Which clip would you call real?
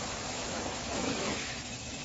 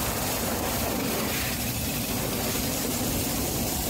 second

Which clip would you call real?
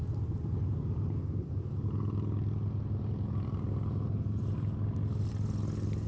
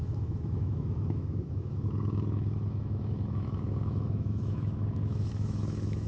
first